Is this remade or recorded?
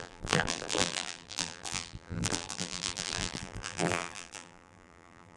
remade